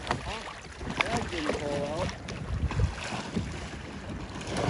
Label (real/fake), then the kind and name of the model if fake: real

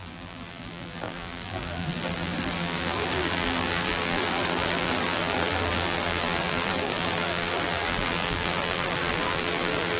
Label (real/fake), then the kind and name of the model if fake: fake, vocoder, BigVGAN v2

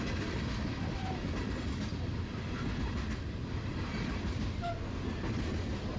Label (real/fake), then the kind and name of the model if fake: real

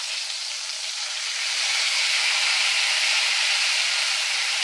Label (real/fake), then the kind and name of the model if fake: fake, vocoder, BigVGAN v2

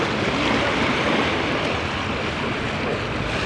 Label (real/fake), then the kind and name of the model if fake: real